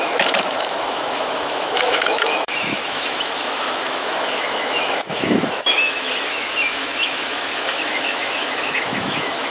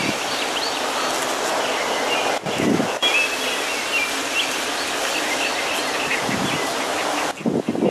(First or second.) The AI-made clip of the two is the first